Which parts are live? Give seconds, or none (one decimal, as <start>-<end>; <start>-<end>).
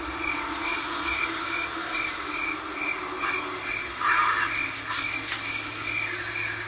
0.0-6.7